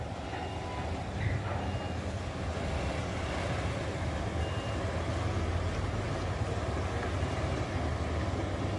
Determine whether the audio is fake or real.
real